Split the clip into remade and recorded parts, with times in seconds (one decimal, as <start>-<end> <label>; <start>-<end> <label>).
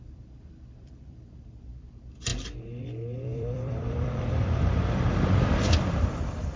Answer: 0.0-2.3 remade; 2.3-2.8 recorded; 2.8-6.6 remade